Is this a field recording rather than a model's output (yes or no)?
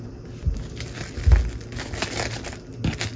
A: yes